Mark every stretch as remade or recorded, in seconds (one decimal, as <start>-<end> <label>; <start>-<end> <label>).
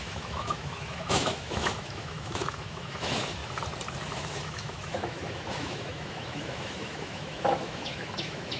0.0-3.4 remade; 3.4-4.1 recorded; 4.1-8.6 remade